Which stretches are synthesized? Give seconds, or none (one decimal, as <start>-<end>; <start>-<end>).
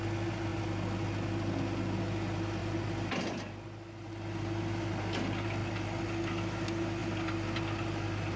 2.6-3.4; 5.6-6.4